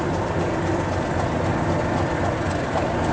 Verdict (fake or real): real